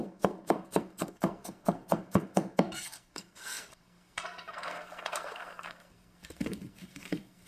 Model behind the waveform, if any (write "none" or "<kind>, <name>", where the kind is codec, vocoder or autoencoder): codec, SNAC